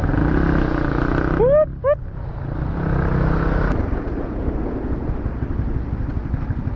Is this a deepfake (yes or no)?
no